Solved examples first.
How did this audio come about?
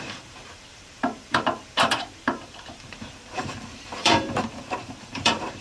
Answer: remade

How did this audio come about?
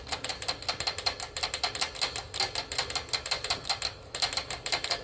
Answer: recorded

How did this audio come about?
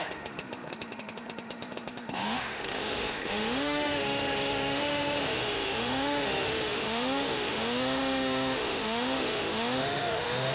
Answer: remade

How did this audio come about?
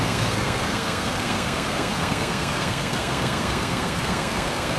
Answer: remade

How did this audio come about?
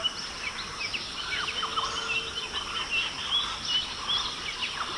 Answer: recorded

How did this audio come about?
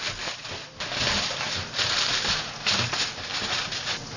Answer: recorded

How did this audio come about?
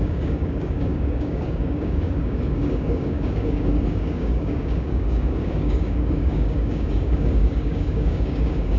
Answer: remade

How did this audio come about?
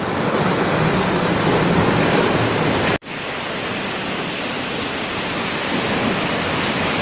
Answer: recorded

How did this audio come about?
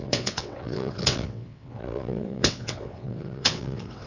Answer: remade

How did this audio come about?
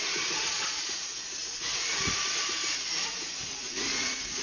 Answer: remade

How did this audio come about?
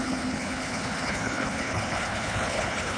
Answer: remade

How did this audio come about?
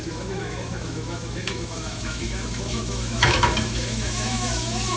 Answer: remade